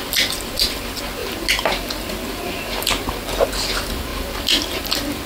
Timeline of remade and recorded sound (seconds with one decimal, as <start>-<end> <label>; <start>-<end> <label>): 0.0-5.3 recorded